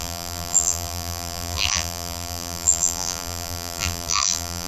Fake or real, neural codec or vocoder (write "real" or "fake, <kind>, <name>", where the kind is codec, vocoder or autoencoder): fake, vocoder, BigVGAN v2